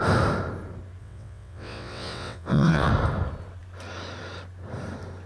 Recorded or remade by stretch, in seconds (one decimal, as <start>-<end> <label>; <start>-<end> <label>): 0.0-1.0 recorded; 1.0-2.9 remade; 2.9-5.3 recorded